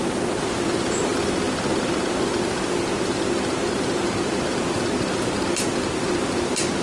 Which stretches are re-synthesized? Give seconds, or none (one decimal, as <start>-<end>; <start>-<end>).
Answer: 0.0-6.8